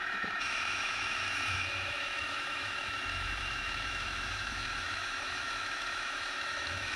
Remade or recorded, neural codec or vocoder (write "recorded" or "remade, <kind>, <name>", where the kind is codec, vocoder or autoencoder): remade, autoencoder, DAC-VAE